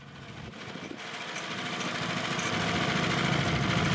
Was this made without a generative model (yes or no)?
yes